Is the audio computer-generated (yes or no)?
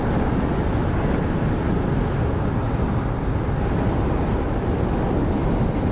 no